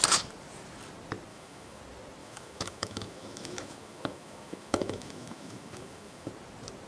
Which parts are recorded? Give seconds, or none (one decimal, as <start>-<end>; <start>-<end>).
0.0-1.3; 1.8-2.2; 6.3-6.9